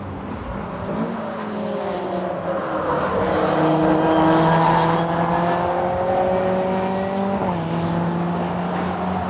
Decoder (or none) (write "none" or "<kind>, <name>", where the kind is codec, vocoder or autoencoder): none